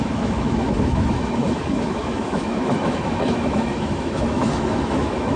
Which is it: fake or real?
fake